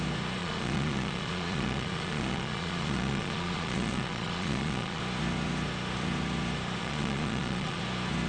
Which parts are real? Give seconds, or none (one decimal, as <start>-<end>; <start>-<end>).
0.0-0.4; 5.0-6.8; 7.8-8.3